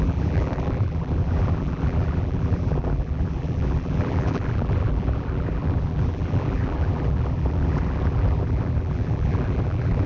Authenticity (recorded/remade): remade